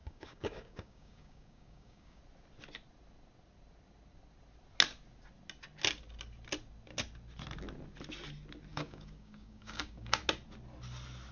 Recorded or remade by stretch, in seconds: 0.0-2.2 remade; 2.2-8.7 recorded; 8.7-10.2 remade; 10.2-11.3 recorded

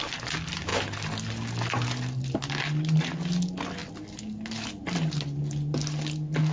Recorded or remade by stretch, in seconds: 0.0-6.5 recorded

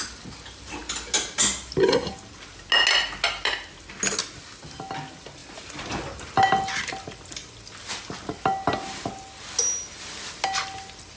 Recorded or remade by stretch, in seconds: 0.0-11.2 recorded

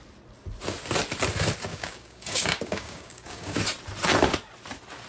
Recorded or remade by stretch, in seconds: 0.0-1.7 recorded; 1.7-3.6 remade; 3.6-5.1 recorded

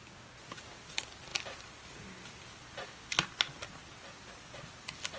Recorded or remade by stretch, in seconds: 0.0-5.2 recorded